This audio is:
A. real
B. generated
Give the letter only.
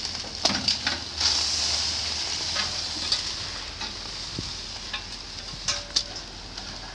A